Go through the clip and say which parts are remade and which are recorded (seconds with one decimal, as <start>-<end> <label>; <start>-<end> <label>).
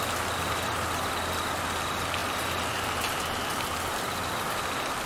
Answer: 0.0-5.1 recorded